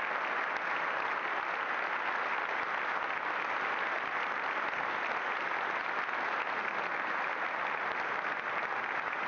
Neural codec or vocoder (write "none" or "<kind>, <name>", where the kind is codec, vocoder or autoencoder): none